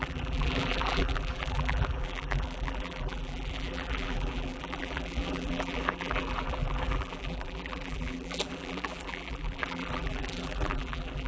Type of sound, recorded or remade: remade